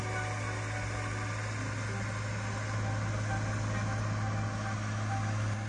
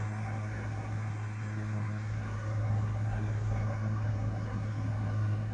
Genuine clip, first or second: first